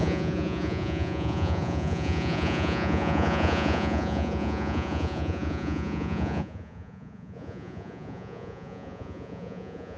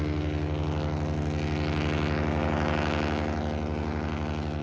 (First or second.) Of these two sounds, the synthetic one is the first